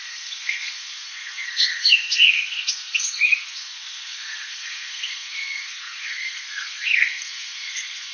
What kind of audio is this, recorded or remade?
remade